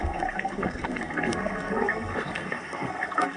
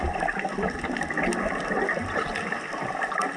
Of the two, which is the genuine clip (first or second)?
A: second